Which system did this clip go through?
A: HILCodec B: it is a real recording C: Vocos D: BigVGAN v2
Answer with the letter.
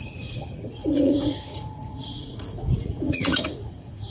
C